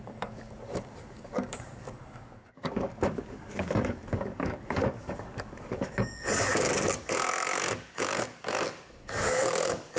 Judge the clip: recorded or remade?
remade